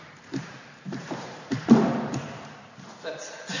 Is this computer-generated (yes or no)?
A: yes